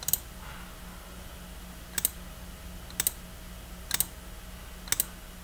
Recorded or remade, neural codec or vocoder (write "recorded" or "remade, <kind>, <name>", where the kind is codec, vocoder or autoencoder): recorded